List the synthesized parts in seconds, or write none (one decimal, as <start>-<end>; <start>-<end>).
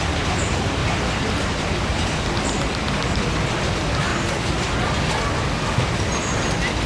0.0-1.9; 2.7-4.1; 6.2-6.9